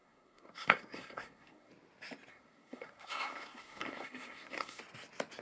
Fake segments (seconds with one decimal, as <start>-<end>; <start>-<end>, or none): 0.0-1.7; 2.3-4.8